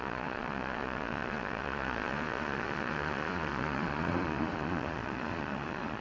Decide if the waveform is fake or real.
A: fake